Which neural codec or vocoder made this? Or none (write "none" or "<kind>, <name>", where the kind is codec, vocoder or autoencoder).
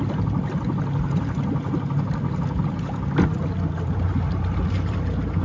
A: none